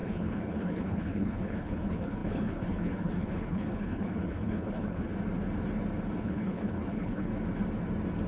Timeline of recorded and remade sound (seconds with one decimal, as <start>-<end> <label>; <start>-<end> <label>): 0.0-5.1 remade; 5.1-6.2 recorded; 6.2-7.3 remade; 7.3-8.3 recorded